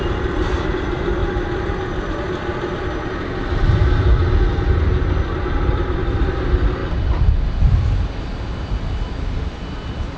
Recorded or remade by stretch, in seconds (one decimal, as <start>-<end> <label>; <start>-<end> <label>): 0.0-1.2 remade; 1.2-2.1 recorded; 2.1-4.2 remade; 4.2-5.5 recorded; 5.5-6.8 remade; 6.8-7.5 recorded; 7.5-10.2 remade